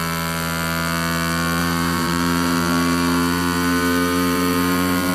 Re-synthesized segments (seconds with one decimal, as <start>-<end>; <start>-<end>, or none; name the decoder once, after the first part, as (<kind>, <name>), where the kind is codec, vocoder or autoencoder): 1.6-5.1 (vocoder, BigVGAN v2)